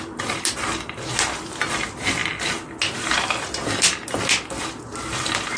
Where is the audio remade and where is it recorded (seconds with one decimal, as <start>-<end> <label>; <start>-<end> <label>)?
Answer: 0.0-5.6 recorded